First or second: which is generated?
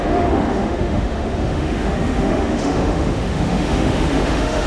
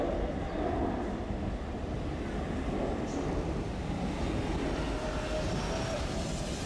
first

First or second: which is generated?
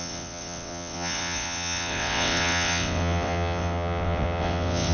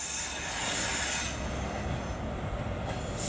first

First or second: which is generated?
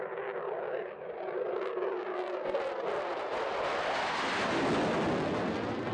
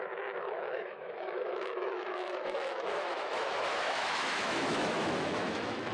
second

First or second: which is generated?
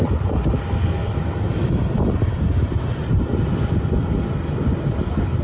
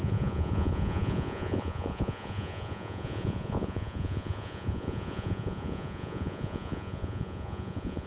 second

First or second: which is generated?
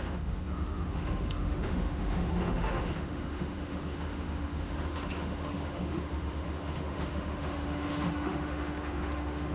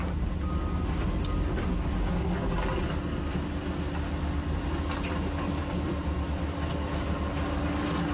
first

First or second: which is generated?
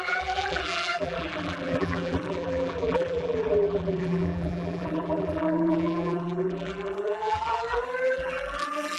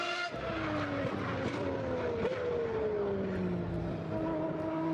first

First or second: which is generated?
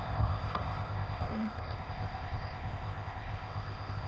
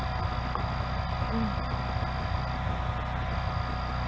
first